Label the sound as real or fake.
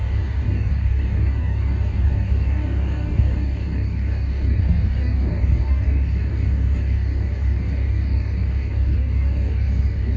fake